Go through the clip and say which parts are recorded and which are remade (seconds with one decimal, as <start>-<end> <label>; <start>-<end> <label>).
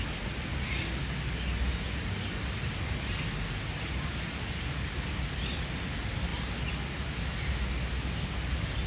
0.0-8.9 recorded